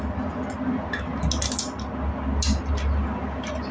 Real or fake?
real